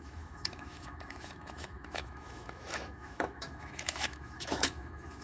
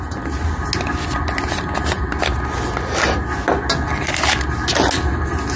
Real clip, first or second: second